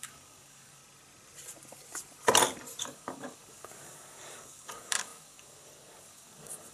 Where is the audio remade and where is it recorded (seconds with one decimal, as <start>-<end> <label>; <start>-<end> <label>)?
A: 0.0-0.8 remade; 0.8-2.8 recorded; 2.8-6.7 remade